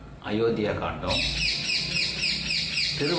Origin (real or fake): real